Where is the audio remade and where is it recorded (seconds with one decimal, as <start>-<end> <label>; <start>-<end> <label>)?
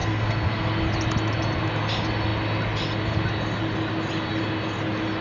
0.0-0.7 remade; 0.7-5.2 recorded